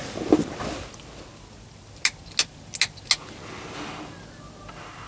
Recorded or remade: recorded